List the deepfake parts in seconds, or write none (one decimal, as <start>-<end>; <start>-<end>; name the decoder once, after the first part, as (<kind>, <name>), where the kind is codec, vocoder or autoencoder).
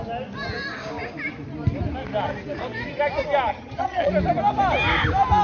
3.5-4.1 (vocoder, HiFi-GAN)